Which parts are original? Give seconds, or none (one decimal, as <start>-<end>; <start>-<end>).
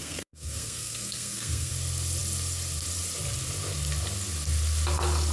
1.7-5.3